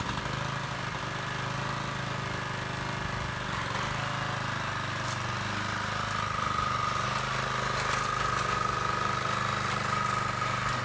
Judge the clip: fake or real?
real